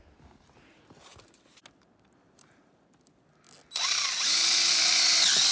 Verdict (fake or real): real